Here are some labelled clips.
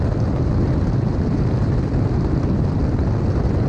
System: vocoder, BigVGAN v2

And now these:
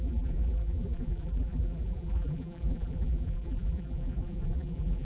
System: vocoder, BigVGAN v2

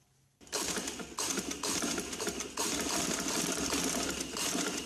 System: none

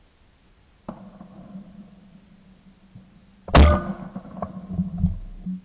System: none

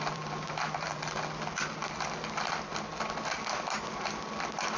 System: none